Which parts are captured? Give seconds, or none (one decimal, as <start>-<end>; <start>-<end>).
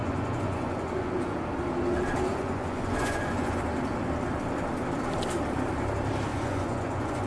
1.4-2.3; 3.6-6.3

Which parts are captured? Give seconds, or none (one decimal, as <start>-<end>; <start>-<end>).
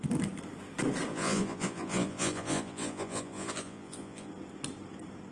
0.0-1.1; 4.3-5.3